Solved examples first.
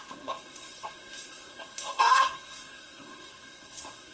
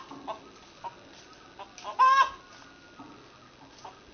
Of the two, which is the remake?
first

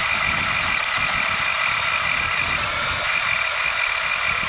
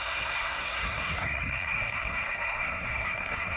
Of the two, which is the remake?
second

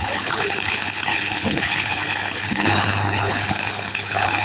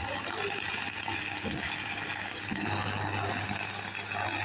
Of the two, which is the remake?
first